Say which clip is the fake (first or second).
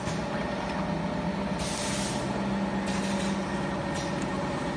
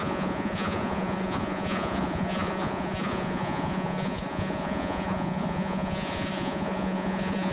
second